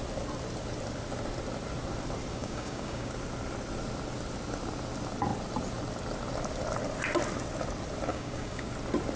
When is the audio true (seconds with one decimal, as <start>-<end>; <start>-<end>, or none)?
0.0-2.3; 3.1-8.1; 8.7-9.2